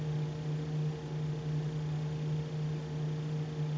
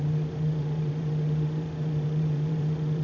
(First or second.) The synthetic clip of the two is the second